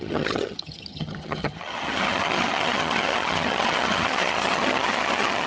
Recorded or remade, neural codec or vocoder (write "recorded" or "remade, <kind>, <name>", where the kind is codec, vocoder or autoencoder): remade, vocoder, HiFi-GAN